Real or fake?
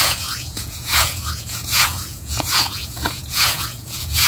fake